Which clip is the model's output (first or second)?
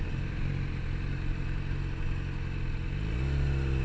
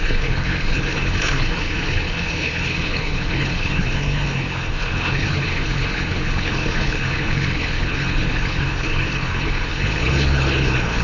second